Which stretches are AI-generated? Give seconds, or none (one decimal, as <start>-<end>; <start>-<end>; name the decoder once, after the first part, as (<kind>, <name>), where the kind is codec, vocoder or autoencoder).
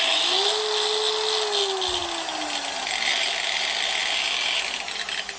none